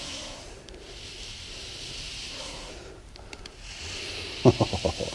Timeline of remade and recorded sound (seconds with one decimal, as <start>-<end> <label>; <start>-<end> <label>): 0.0-0.4 remade; 0.4-2.3 recorded; 2.3-2.7 remade; 2.7-5.1 recorded